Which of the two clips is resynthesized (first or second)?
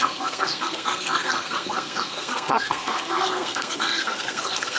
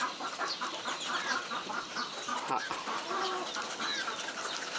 first